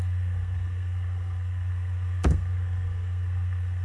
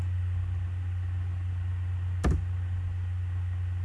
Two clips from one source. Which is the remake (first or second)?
first